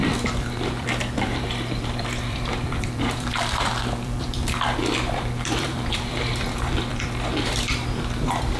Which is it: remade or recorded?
remade